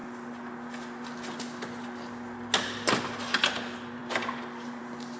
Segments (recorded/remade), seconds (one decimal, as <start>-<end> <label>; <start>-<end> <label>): 0.0-5.2 recorded